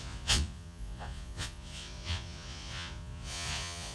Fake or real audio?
fake